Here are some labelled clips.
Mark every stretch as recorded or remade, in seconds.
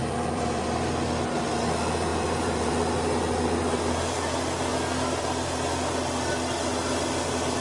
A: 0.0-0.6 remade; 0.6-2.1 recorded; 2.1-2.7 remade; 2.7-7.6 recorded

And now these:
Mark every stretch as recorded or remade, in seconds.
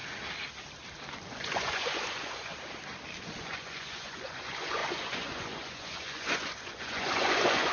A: 0.0-1.3 recorded; 1.3-2.5 remade; 2.5-3.2 recorded; 3.2-7.7 remade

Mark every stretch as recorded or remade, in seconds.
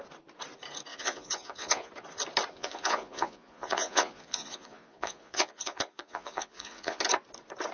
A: 0.0-0.9 recorded; 0.9-1.9 remade; 1.9-2.5 recorded; 2.5-7.0 remade; 7.0-7.7 recorded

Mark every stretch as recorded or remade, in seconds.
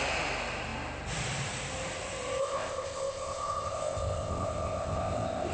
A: 0.0-2.4 recorded; 2.4-5.5 remade